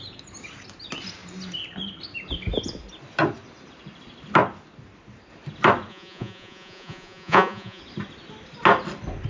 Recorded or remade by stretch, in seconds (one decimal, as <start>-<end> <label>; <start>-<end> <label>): 0.0-5.9 recorded; 5.9-7.8 remade; 7.8-9.3 recorded